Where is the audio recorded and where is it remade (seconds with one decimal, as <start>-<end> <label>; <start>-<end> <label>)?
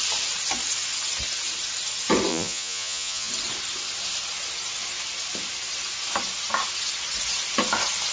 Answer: 0.0-2.3 recorded; 2.3-3.3 remade; 3.3-8.1 recorded